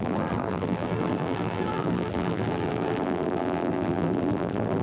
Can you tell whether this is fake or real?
fake